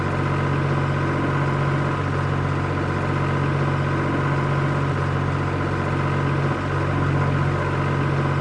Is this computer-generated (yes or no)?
no